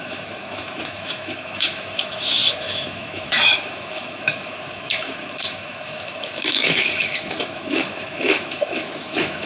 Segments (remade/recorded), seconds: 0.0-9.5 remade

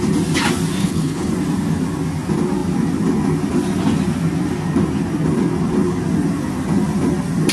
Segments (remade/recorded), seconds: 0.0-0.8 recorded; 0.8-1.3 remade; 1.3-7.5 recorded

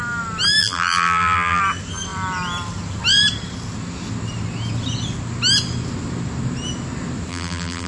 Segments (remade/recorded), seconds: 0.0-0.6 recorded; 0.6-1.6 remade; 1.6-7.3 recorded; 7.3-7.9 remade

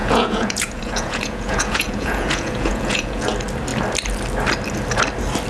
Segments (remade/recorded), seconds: 0.0-3.3 remade; 3.3-5.5 recorded

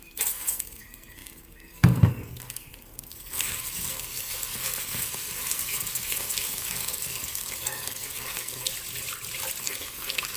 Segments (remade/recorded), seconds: 0.0-8.7 remade; 8.7-9.6 recorded; 9.6-10.4 remade

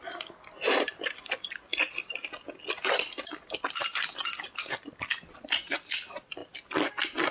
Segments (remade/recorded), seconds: 0.0-7.3 recorded

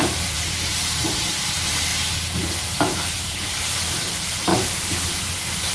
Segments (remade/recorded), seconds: 0.0-1.9 remade; 1.9-2.6 recorded; 2.6-5.7 remade